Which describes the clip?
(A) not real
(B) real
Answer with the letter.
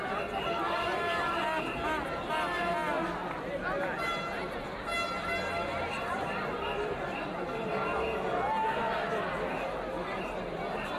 B